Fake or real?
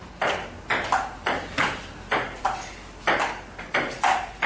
real